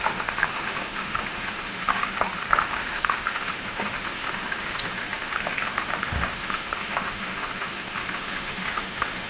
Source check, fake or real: fake